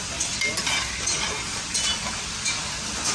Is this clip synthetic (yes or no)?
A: no